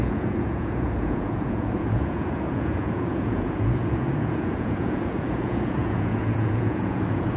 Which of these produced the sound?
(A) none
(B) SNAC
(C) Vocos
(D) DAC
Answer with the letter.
C